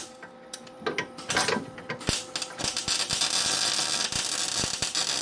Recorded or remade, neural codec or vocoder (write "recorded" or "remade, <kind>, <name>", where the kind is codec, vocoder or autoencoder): recorded